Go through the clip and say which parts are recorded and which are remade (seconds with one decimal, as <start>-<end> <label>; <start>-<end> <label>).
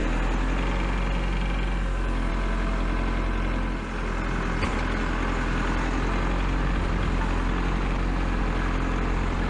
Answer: 0.0-9.5 recorded